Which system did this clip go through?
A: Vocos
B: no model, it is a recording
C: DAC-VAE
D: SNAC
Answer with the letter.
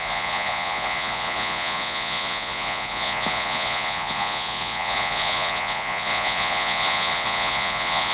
A